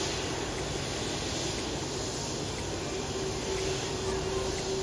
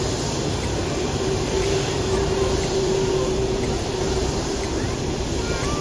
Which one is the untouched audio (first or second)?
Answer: first